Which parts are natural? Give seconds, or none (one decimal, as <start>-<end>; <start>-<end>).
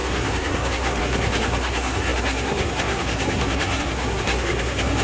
none